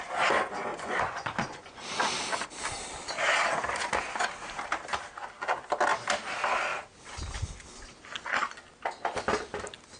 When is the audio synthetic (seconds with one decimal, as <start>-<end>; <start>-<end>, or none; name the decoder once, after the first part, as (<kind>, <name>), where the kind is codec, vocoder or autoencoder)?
0.7-1.8 (vocoder, Vocos)